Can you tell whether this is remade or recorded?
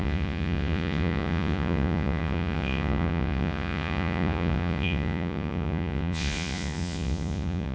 remade